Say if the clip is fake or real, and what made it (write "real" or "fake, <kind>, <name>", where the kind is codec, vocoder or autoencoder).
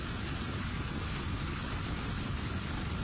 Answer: real